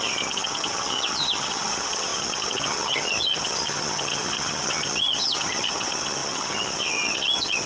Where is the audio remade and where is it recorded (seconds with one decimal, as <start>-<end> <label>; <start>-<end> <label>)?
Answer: 0.0-7.7 remade